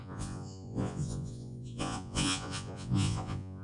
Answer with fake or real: fake